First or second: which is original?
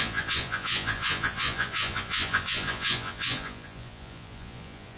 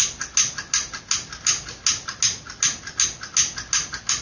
second